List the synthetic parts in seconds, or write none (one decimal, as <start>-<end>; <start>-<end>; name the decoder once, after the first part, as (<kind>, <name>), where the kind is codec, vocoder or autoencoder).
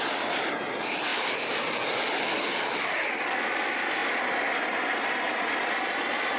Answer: none